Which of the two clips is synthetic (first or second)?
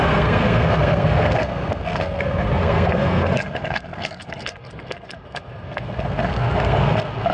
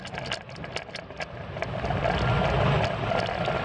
first